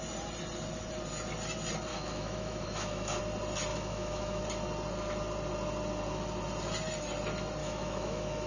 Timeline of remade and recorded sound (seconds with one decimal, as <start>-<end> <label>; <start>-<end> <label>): 0.0-1.9 recorded; 1.9-3.2 remade; 3.2-3.7 recorded; 3.7-4.4 remade; 4.4-7.6 recorded; 7.6-8.5 remade